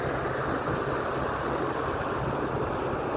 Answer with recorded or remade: recorded